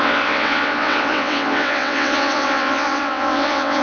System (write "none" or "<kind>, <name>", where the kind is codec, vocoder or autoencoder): vocoder, WaveNeXt